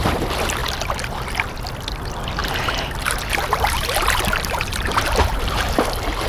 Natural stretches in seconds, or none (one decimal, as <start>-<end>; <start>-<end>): 0.0-2.4; 5.8-6.3